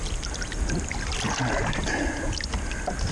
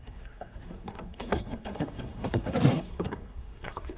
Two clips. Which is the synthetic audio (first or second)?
second